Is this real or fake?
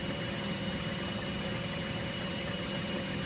fake